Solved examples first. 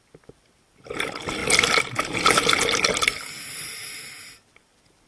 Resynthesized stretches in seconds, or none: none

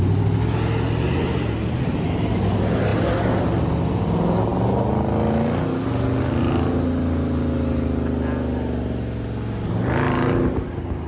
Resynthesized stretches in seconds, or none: none

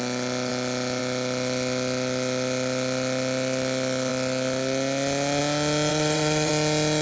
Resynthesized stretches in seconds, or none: 5.9-6.5 (vocoder, WaveNeXt)

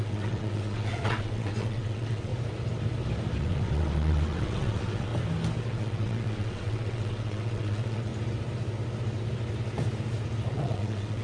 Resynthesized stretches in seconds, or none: 0.0-2.3 (vocoder, WaveNeXt); 3.4-5.1; 5.6-8.1; 10.5-11.2

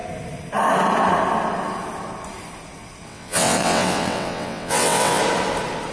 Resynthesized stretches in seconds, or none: 3.1-5.2 (vocoder, WaveNeXt)

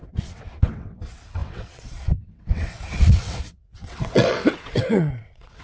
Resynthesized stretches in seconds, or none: 0.0-5.6 (vocoder, WaveNeXt)

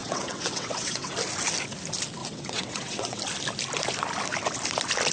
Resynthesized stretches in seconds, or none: 0.0-1.1 (vocoder, WaveNeXt); 2.2-3.2